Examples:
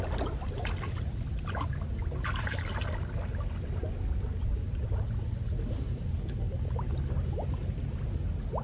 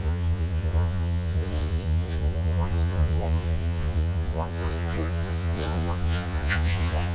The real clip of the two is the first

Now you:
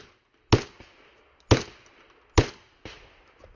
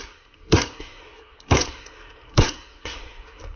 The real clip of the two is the first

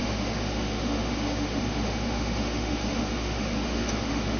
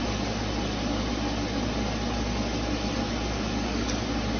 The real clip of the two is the second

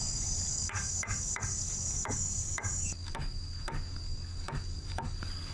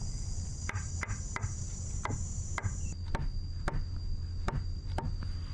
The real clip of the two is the second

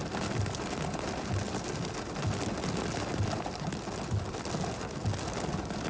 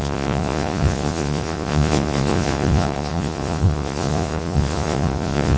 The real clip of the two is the first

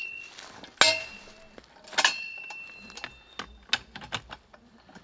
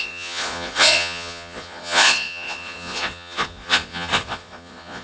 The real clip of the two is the first